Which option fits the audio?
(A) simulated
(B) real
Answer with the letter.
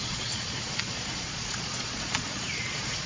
A